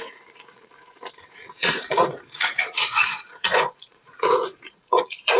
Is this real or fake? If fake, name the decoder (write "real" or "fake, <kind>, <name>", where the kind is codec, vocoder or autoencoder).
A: fake, vocoder, Vocos